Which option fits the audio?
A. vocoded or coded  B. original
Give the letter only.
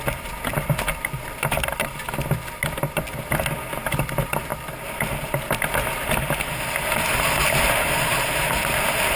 B